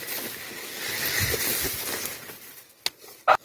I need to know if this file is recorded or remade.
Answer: recorded